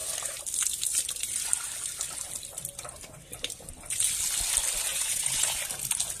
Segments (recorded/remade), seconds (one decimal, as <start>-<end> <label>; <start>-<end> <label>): 0.0-4.9 recorded; 4.9-5.6 remade; 5.6-6.2 recorded